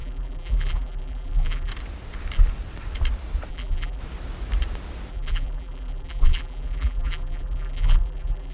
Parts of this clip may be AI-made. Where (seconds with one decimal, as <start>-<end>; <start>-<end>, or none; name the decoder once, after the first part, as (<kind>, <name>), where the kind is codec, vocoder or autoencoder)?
0.0-1.7 (vocoder, BigVGAN v2); 3.5-4.0; 5.1-8.5